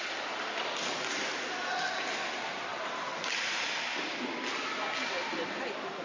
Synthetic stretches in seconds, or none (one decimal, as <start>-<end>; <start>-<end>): none